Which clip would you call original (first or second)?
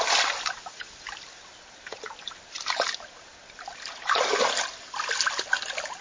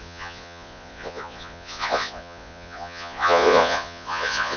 first